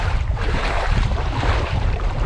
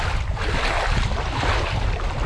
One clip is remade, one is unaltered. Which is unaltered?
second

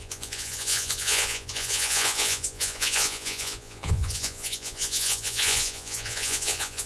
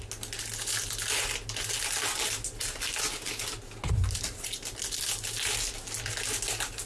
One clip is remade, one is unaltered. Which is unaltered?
second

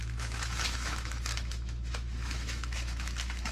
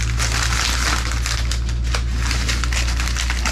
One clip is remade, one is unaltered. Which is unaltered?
second